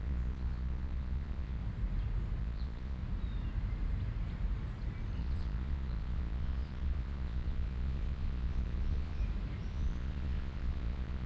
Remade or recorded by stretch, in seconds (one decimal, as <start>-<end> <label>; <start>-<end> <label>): 0.0-1.6 remade; 1.6-2.4 recorded; 2.4-3.0 remade; 3.0-5.2 recorded; 5.2-9.2 remade; 9.2-9.7 recorded; 9.7-11.3 remade

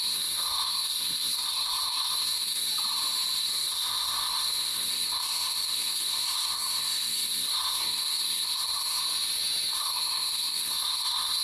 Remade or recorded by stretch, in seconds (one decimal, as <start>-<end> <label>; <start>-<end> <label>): 0.0-2.7 remade; 2.7-3.4 recorded; 3.4-9.0 remade; 9.0-9.7 recorded; 9.7-11.4 remade